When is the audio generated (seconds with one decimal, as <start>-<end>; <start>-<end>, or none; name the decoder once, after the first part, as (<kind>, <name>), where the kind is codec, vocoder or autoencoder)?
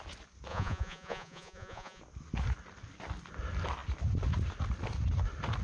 0.5-2.0 (vocoder, Vocos)